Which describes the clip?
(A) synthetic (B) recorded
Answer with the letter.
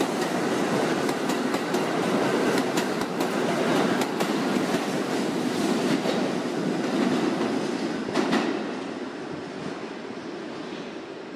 B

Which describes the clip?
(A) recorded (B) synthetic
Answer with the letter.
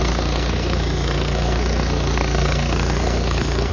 B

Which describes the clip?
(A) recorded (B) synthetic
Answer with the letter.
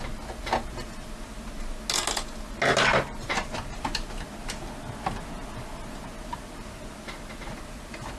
A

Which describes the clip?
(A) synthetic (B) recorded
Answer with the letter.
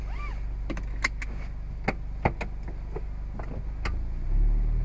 B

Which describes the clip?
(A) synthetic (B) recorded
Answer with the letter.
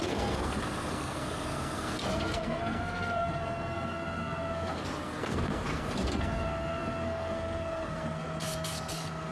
A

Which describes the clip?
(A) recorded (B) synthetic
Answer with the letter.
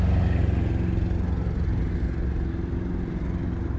A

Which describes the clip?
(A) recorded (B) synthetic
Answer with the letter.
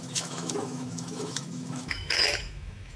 B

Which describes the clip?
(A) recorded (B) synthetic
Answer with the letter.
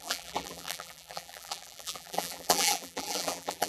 B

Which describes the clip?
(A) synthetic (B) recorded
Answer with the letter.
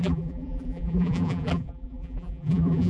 A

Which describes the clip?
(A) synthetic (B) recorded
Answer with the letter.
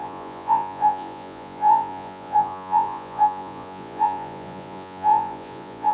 A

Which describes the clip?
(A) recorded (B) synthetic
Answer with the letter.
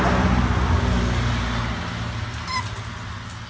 A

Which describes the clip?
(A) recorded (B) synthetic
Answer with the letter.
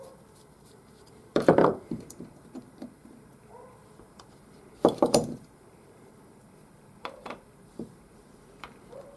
B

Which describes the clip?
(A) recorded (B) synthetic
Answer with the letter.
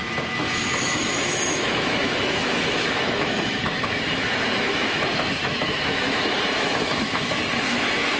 B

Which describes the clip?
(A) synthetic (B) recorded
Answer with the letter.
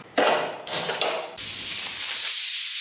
B